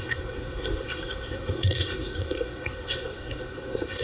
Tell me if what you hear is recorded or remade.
remade